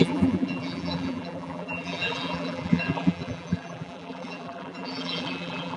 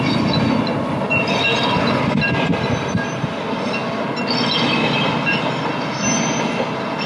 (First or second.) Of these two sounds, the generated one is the first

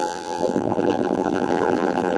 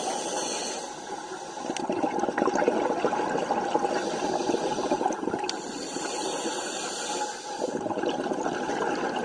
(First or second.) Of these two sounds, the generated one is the first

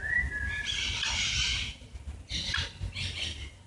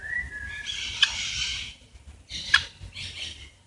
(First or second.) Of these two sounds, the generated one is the second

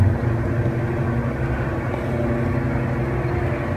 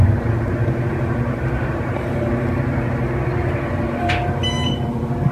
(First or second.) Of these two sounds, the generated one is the second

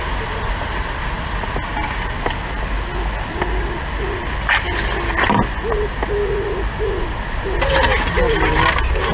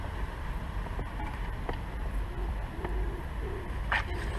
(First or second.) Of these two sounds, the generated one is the second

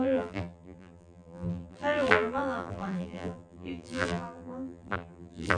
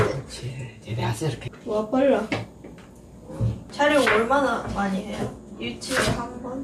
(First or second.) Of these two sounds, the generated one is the first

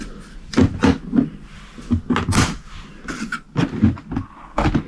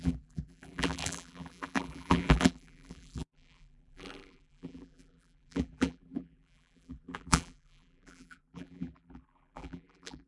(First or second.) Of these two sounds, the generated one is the second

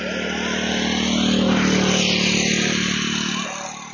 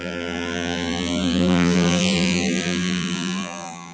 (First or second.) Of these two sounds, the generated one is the second